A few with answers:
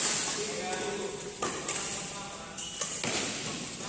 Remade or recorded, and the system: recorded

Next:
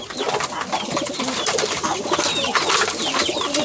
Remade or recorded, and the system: recorded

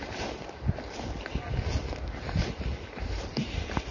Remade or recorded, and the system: recorded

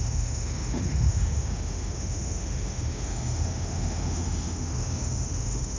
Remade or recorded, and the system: remade, autoencoder, DAC-VAE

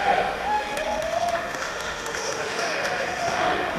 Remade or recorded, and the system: remade, autoencoder, DAC-VAE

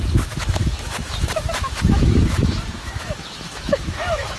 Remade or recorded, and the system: remade, autoencoder, DAC-VAE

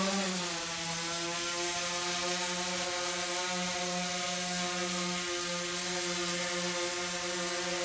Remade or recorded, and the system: recorded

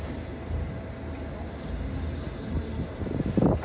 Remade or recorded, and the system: recorded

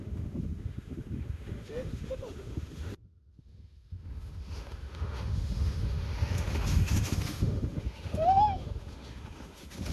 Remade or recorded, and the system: remade, autoencoder, DAC-VAE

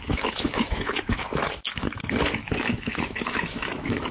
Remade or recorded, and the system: remade, autoencoder, DAC-VAE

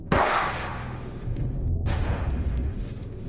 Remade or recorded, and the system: remade, autoencoder, DAC-VAE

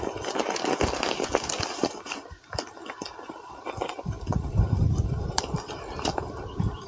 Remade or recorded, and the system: recorded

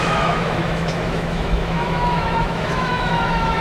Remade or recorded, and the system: remade, autoencoder, DAC-VAE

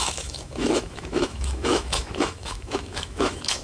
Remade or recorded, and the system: remade, autoencoder, DAC-VAE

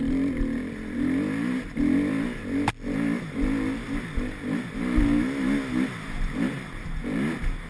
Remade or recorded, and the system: recorded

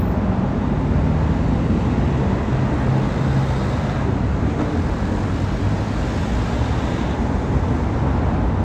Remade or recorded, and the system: recorded